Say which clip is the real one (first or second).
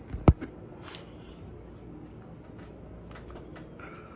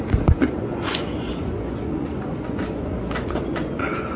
first